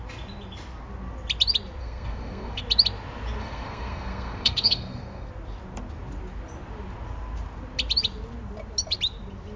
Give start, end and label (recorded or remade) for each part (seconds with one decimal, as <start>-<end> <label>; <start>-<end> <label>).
0.0-1.8 recorded; 1.8-2.6 remade; 2.6-3.4 recorded; 3.4-5.3 remade; 5.3-9.6 recorded